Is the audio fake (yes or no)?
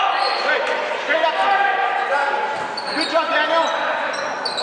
no